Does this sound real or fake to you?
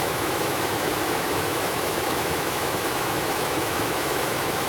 fake